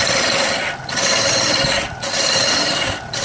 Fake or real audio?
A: real